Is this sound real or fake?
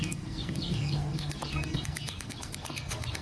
fake